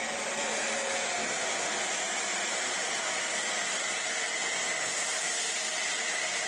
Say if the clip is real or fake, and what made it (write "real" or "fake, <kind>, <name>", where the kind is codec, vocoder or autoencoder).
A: real